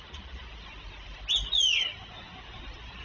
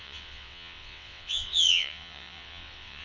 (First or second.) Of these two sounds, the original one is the first